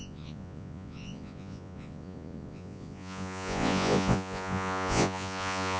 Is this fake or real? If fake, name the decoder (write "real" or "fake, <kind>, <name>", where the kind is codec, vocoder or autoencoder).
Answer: fake, vocoder, Vocos